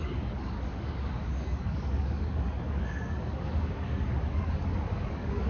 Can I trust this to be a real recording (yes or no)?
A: no